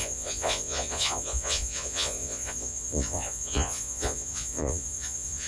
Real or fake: fake